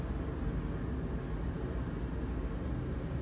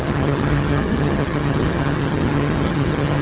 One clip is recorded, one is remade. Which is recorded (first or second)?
first